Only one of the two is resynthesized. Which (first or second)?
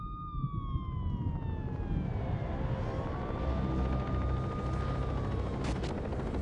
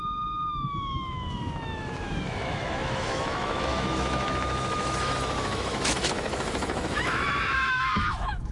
second